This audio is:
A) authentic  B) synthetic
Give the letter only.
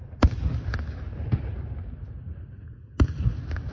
A